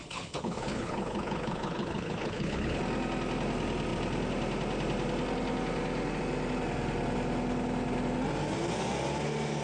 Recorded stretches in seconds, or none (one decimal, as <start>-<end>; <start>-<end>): 2.8-9.6